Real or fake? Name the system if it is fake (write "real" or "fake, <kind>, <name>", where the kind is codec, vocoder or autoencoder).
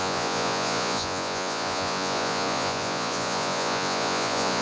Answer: fake, vocoder, Vocos